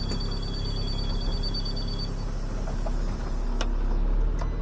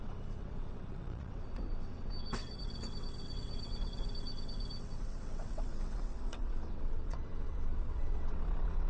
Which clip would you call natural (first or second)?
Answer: first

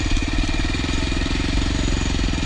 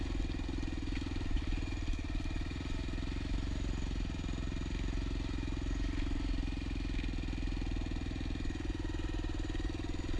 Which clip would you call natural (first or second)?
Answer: second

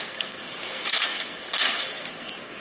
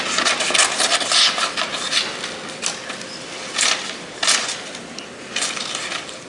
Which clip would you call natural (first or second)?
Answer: second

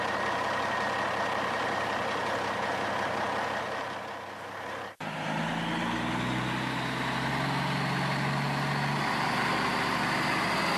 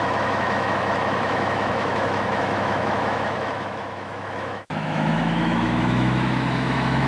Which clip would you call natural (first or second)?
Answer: first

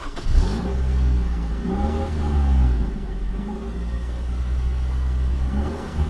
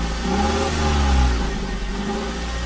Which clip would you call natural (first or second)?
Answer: second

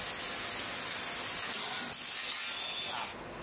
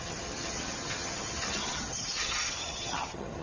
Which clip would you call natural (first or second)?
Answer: first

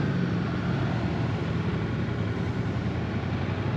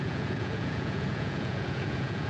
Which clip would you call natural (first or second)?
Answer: first